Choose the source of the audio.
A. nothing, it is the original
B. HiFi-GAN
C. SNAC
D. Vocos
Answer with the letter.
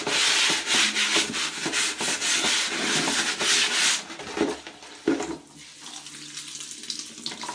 A